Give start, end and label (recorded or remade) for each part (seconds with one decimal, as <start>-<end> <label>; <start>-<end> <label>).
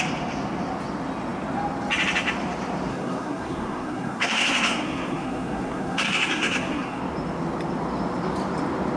0.0-2.9 recorded; 2.9-7.0 remade; 7.0-9.0 recorded